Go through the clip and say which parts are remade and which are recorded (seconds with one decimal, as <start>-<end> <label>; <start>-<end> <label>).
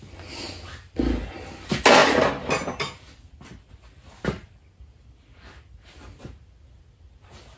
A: 0.0-7.6 recorded